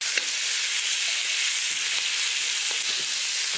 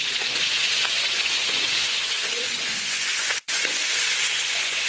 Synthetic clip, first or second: second